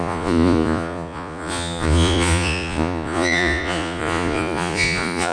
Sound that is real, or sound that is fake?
fake